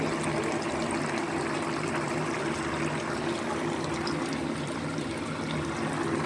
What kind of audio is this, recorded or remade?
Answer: recorded